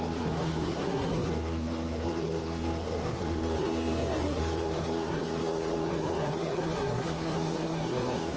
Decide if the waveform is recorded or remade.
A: remade